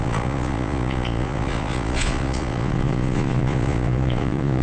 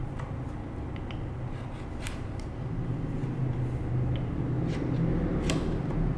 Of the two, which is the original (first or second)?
second